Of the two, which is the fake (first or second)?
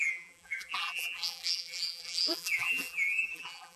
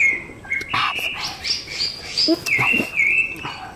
first